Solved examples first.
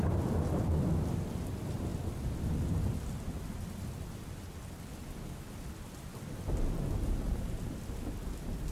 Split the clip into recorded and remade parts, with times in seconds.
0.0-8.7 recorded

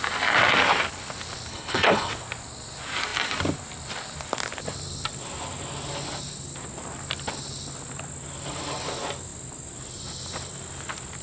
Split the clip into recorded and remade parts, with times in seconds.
0.0-1.5 recorded; 1.5-2.1 remade; 2.1-11.2 recorded

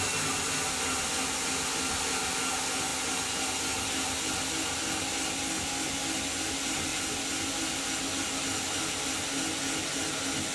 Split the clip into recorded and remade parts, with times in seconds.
0.0-10.5 recorded